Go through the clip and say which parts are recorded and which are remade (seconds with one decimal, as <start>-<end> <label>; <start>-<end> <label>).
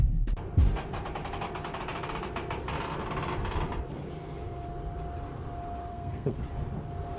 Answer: 0.0-5.9 recorded; 5.9-6.4 remade; 6.4-7.2 recorded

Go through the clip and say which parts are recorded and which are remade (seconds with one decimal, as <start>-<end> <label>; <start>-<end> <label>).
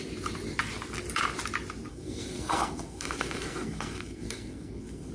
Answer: 0.0-1.9 recorded; 1.9-5.1 remade